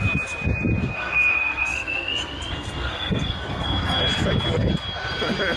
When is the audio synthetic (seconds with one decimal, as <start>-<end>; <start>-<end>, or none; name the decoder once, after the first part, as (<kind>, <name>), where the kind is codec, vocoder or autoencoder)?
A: 0.8-4.0 (codec, SNAC)